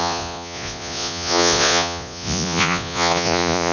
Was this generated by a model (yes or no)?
yes